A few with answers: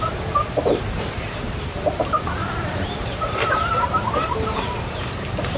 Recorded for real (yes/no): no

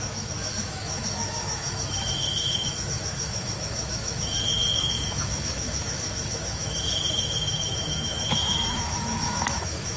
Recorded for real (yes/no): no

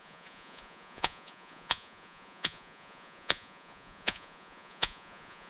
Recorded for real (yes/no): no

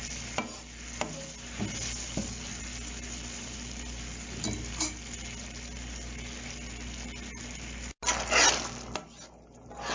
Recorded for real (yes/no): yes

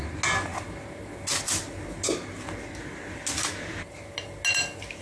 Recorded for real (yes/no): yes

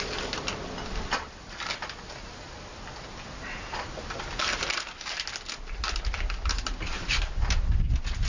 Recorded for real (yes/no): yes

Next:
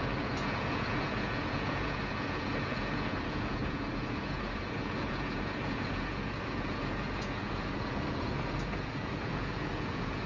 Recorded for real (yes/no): no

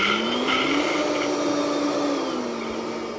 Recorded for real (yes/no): yes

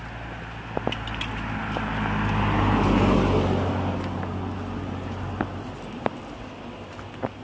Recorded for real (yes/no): yes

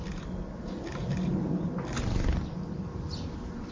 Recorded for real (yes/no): yes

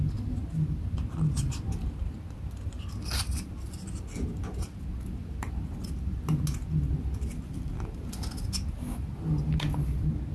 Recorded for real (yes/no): yes